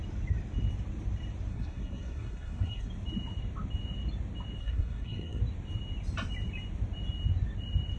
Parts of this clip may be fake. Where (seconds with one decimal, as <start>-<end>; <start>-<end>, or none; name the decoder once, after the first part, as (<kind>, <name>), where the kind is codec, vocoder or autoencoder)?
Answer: 1.5-2.9 (codec, SNAC); 4.6-5.4